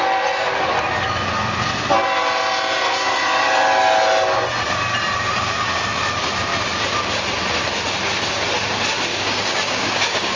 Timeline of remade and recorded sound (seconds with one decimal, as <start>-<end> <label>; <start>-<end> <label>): 0.0-9.1 recorded; 9.1-10.4 remade